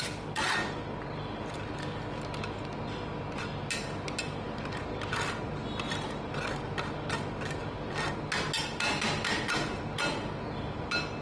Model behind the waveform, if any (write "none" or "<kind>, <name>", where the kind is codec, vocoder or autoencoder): none